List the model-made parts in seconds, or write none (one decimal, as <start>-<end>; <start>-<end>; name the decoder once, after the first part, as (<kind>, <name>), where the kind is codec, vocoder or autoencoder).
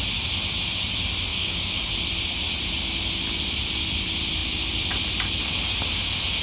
1.3-1.9 (codec, DAC)